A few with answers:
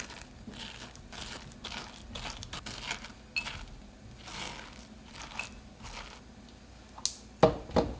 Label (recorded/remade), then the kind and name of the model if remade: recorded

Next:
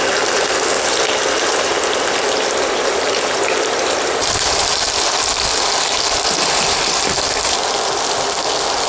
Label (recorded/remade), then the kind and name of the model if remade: recorded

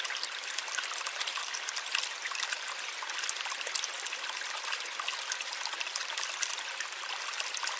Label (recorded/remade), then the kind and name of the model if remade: recorded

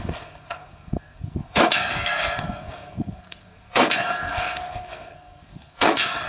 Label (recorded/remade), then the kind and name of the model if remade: remade, codec, SNAC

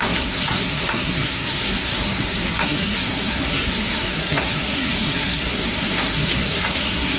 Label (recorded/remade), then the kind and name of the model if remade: remade, codec, SNAC